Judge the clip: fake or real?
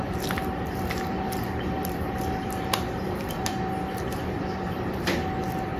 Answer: fake